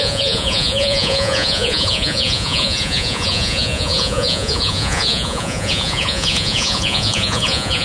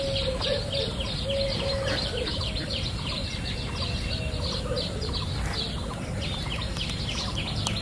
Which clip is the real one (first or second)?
second